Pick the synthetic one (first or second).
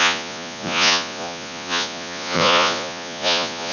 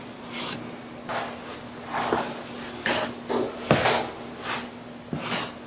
first